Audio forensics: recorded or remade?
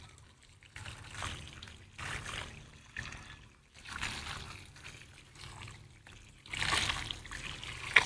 recorded